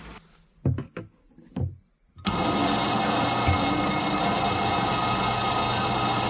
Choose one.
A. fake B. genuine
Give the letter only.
B